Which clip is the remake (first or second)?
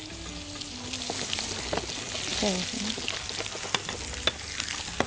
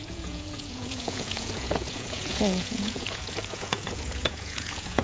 second